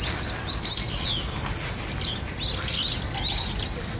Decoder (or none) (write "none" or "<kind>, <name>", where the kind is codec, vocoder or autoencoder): none